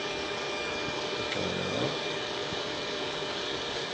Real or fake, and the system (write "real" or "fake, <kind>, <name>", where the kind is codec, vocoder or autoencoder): fake, codec, DAC